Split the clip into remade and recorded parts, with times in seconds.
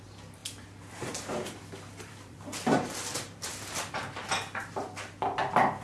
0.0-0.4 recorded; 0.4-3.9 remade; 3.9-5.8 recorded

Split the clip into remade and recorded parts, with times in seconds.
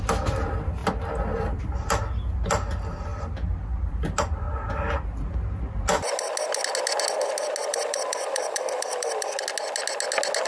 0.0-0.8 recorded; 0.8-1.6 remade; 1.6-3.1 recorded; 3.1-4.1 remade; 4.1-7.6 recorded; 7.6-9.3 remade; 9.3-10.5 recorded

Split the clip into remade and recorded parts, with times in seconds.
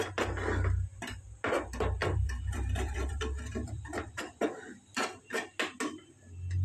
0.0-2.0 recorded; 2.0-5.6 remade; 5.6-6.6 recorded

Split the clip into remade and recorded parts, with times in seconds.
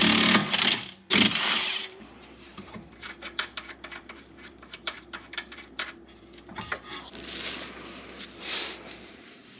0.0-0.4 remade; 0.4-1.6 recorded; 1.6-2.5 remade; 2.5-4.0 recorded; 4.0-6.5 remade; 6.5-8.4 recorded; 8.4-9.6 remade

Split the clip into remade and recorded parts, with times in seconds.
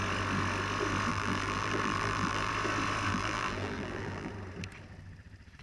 0.0-1.1 recorded; 1.1-2.5 remade; 2.5-3.1 recorded; 3.1-4.3 remade; 4.3-5.6 recorded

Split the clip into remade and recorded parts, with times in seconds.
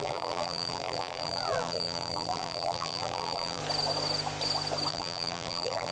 0.0-3.6 remade; 3.6-4.9 recorded; 4.9-5.9 remade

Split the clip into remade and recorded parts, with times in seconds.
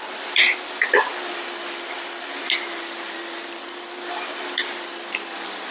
0.0-1.1 remade; 1.1-2.4 recorded; 2.4-5.7 remade